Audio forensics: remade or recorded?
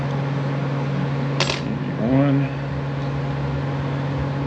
recorded